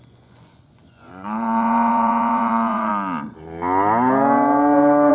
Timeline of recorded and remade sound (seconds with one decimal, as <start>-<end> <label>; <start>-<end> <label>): 0.0-2.9 remade; 2.9-5.1 recorded